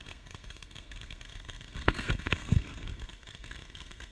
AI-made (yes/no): yes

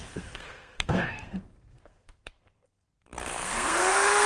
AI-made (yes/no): yes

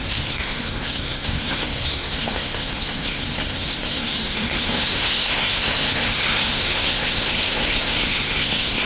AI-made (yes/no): yes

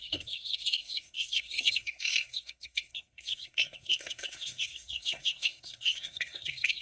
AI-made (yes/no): yes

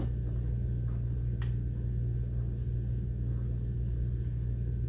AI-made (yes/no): no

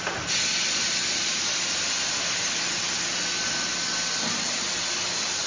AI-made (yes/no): no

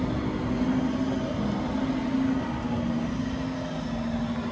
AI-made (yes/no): no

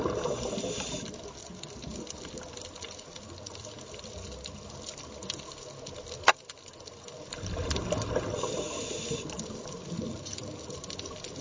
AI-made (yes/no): no